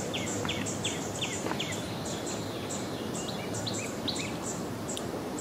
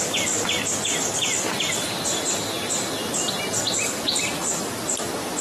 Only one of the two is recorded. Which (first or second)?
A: second